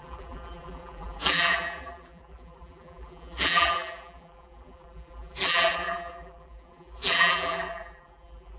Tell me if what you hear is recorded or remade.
remade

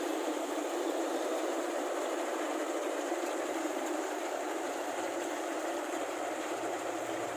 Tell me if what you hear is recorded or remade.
remade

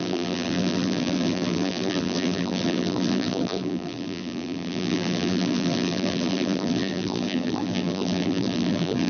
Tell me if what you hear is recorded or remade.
remade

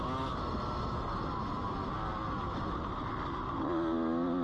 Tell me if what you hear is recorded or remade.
recorded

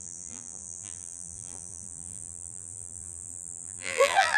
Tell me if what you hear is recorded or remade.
remade